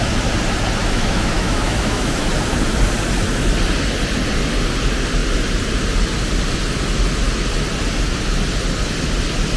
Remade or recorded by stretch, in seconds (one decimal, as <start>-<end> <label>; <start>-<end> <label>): 0.0-0.8 recorded; 0.8-2.3 remade; 2.3-9.6 recorded